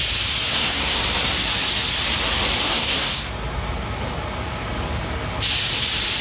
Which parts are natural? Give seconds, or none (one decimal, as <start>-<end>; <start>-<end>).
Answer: 0.0-0.5; 1.0-2.7; 3.3-6.2